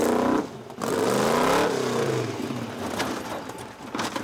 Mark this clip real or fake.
real